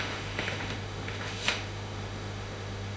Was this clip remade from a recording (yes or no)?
yes